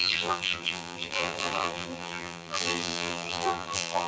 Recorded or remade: remade